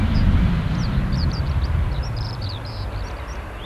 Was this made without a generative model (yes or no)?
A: yes